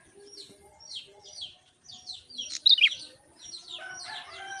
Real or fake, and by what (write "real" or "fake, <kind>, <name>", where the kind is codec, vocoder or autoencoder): real